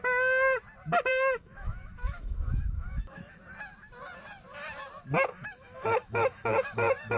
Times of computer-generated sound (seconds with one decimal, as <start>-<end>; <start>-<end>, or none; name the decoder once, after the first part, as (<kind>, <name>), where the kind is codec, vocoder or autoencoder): 1.1-3.4 (autoencoder, DAC-VAE); 5.3-7.2